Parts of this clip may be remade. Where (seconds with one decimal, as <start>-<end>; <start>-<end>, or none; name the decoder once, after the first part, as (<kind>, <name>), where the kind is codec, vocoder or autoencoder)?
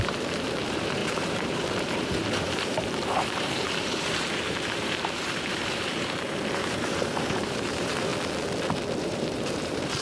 0.0-8.1 (vocoder, BigVGAN v2); 9.0-10.0